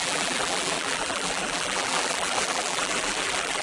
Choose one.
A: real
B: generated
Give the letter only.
B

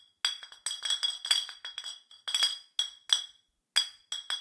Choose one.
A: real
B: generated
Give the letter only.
A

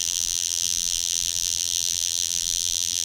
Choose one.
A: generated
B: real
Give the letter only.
A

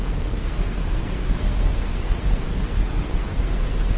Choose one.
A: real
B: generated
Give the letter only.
B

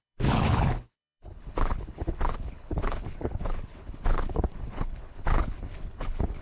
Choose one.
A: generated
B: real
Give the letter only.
A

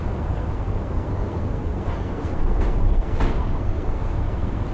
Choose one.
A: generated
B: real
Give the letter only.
A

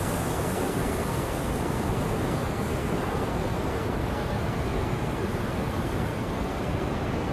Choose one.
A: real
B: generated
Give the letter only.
B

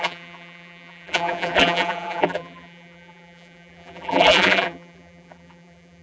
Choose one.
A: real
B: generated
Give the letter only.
B